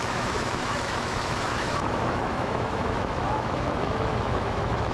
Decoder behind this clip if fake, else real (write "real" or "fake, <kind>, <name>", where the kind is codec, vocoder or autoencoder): fake, autoencoder, DAC-VAE